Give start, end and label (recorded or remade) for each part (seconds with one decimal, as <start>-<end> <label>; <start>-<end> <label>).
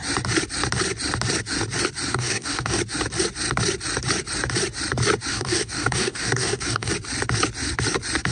0.0-2.1 recorded; 2.1-2.8 remade; 2.8-5.3 recorded; 5.3-6.9 remade; 6.9-8.3 recorded